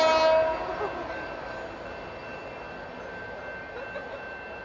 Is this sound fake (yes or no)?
no